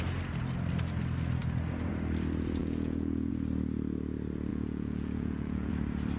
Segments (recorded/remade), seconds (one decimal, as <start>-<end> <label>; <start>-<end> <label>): 0.0-2.6 recorded; 2.6-3.3 remade; 3.3-4.5 recorded; 4.5-5.7 remade; 5.7-6.2 recorded